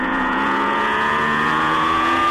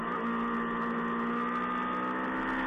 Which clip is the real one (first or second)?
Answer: second